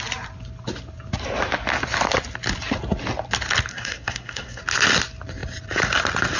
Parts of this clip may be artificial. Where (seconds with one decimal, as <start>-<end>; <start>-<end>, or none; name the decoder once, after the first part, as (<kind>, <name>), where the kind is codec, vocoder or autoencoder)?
3.7-4.6 (codec, SNAC)